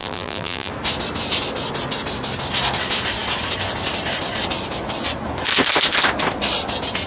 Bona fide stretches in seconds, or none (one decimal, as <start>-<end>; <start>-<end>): 0.7-7.1